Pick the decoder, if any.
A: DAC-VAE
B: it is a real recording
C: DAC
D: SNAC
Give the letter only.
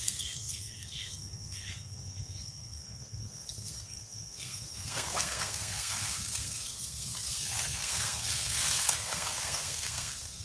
D